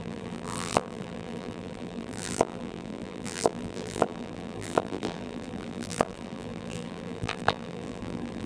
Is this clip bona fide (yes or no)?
no